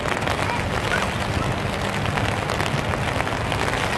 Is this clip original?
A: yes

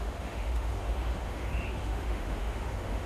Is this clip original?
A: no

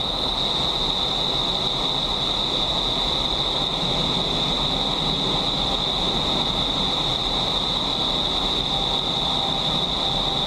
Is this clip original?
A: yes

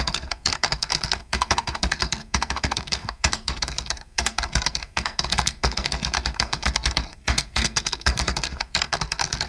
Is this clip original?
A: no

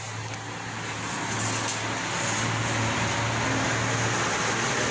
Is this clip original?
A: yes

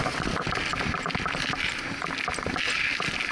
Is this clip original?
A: yes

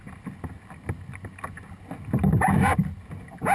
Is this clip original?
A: yes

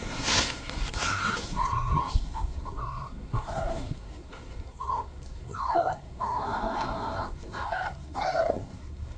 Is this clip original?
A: no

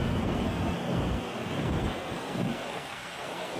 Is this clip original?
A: no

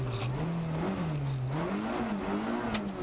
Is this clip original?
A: yes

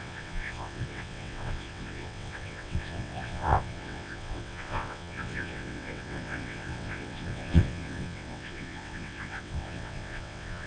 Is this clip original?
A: no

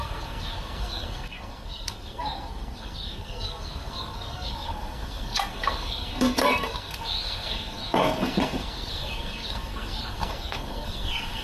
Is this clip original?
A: no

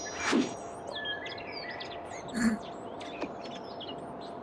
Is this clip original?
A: yes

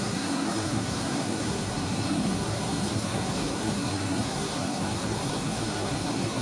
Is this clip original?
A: no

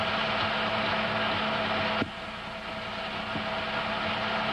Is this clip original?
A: yes